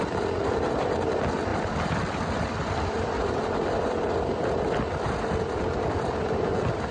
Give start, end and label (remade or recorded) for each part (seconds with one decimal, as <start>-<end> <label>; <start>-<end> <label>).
0.0-1.5 recorded; 1.5-5.6 remade; 5.6-6.9 recorded